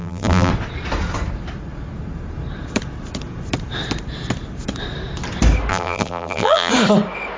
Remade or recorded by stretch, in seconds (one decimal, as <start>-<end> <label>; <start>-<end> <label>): 0.0-0.5 remade; 0.5-5.7 recorded; 5.7-6.7 remade; 6.7-7.4 recorded